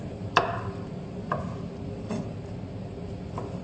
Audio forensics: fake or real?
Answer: real